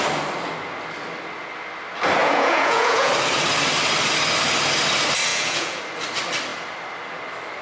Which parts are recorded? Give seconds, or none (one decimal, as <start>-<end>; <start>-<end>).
0.0-2.2; 3.1-5.3; 5.8-7.6